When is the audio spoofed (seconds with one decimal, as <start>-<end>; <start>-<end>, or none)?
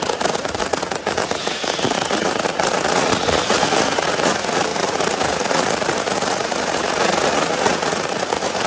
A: 0.0-8.7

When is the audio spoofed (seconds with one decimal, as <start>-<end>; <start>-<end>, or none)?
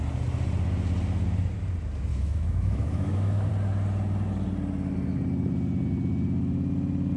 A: 2.1-3.5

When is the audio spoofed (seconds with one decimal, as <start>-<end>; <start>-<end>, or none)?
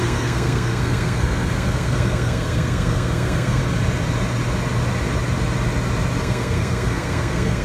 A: 0.0-3.6; 6.2-7.6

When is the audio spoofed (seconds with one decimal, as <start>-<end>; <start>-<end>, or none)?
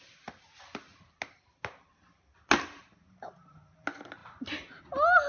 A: none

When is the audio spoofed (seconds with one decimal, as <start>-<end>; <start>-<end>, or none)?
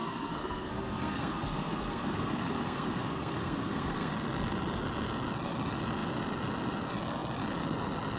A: 0.0-4.1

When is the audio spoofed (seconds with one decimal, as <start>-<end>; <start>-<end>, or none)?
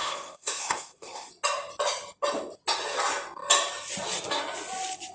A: 0.0-1.3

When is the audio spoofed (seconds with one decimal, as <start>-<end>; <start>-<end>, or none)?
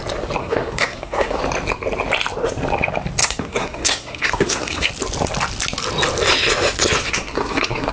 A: 0.4-1.4; 3.2-4.9; 7.0-7.9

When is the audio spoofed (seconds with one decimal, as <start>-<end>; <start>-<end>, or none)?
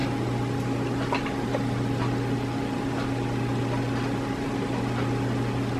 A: none